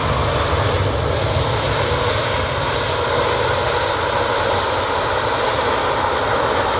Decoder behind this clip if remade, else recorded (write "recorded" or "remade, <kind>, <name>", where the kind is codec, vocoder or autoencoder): recorded